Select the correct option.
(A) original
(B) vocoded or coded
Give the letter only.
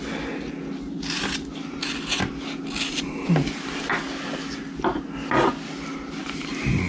A